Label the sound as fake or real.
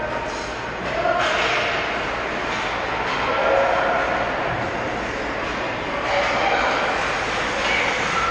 real